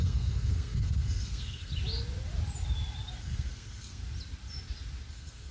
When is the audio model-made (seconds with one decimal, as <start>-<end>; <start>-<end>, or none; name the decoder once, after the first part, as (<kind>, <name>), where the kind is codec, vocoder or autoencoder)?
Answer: 0.0-1.7 (codec, SNAC); 3.2-4.0; 5.1-5.5

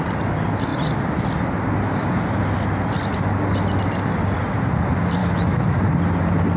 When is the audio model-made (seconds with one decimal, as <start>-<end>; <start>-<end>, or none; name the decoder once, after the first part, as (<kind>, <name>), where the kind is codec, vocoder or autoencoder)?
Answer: 5.2-5.9 (autoencoder, DAC-VAE)

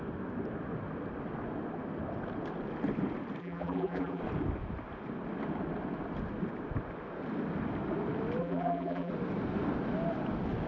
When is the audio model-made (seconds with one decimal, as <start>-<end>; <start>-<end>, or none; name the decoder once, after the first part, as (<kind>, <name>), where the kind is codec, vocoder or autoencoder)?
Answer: 3.4-4.2 (vocoder, BigVGAN v2); 8.4-9.1